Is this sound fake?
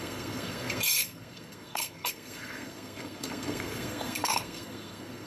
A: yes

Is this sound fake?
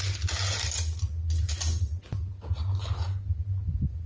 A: no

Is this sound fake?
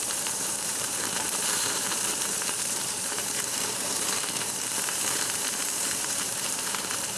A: yes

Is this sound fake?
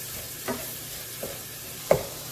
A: yes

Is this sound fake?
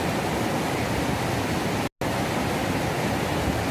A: no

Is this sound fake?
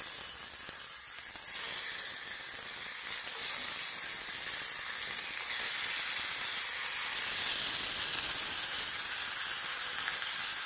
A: no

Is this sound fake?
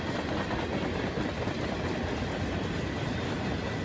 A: no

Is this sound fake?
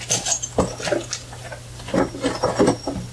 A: no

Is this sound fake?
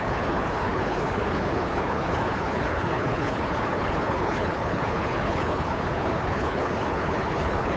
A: yes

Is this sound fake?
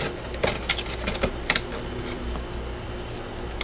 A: no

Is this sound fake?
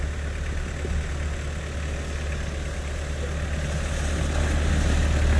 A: no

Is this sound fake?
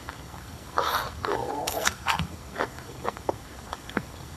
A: yes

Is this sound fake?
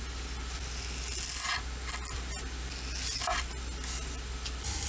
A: no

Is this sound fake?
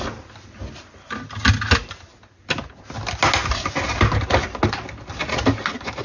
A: no